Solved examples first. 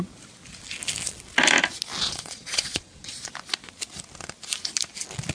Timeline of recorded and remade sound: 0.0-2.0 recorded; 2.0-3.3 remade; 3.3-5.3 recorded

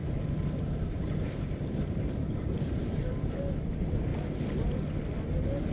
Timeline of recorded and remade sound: 0.0-3.4 remade; 3.4-4.1 recorded; 4.1-5.0 remade; 5.0-5.7 recorded